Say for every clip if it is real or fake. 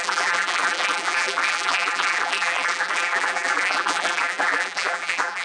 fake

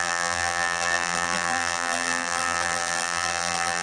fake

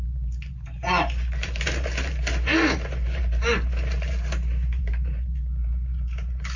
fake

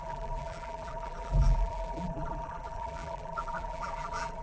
fake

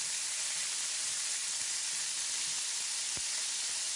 fake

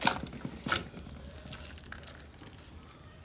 real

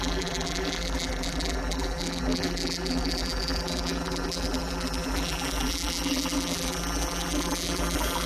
fake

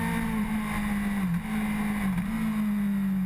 real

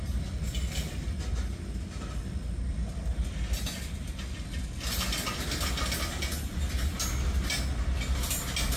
real